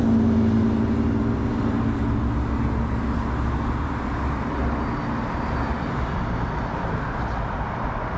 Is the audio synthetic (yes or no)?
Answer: no